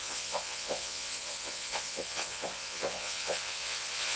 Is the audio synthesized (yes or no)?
yes